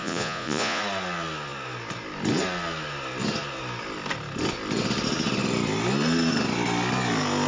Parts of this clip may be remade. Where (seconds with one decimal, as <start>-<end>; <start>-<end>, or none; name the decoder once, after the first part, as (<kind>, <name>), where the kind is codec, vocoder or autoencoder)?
0.0-0.8 (vocoder, Vocos)